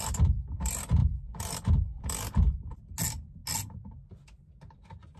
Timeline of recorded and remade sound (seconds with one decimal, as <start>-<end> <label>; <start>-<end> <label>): 0.0-1.0 recorded; 1.0-2.8 remade; 2.8-5.2 recorded